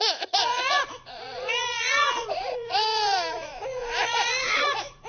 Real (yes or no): no